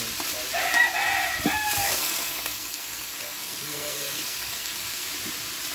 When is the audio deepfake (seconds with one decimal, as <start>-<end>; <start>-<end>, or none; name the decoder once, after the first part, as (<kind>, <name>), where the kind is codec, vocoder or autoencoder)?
1.8-5.1 (codec, SNAC)

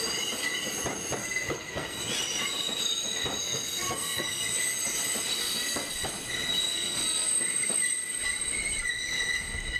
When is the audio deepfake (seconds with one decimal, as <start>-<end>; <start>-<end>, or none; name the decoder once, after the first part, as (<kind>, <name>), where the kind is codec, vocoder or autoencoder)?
1.2-2.0 (codec, SNAC); 3.4-4.4; 5.4-6.1; 6.7-7.3

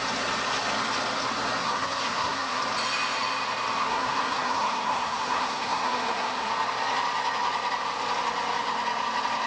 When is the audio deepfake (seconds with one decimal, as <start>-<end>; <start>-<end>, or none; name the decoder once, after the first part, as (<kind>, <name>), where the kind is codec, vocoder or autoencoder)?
1.6-2.6 (codec, SNAC); 3.9-6.5

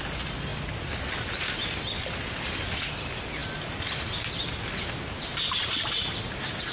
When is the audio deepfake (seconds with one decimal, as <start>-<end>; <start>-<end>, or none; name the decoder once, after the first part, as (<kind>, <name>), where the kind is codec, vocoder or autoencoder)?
none